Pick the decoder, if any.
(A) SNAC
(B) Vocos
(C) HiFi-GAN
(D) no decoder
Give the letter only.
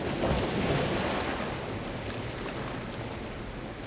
D